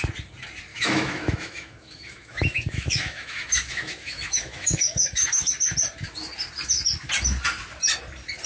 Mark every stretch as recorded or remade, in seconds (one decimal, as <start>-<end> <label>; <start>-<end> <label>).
0.0-0.7 recorded; 0.7-5.5 remade; 5.5-8.5 recorded